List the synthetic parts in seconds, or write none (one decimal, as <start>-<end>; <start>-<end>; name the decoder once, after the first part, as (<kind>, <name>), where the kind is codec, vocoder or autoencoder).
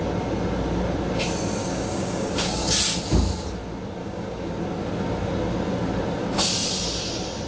1.6-2.6 (codec, DAC); 4.0-4.5